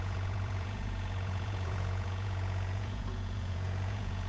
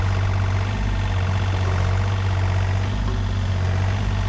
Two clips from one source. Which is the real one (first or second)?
second